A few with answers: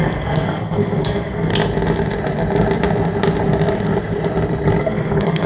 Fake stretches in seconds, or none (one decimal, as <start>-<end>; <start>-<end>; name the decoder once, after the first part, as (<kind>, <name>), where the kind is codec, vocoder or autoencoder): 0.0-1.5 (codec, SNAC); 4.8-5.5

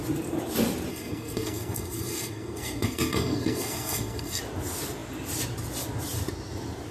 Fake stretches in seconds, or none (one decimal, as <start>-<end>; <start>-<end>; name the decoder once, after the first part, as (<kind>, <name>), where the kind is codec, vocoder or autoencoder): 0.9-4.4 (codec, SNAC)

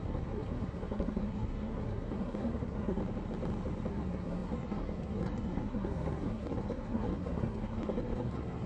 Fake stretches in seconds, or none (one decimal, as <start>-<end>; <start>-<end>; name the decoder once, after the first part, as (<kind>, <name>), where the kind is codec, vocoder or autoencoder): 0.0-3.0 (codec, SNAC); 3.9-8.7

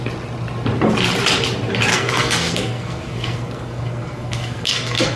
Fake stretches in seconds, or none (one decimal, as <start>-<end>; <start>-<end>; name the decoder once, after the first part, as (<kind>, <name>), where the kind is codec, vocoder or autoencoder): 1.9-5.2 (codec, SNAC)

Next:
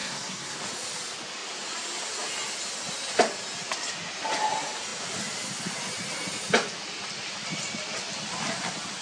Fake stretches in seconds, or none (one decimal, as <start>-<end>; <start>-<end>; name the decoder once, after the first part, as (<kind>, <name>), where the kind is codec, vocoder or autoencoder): 0.0-0.6 (codec, SNAC)